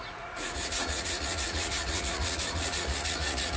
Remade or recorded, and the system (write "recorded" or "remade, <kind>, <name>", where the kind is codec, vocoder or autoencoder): remade, vocoder, Vocos